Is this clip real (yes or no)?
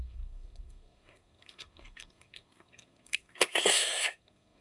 no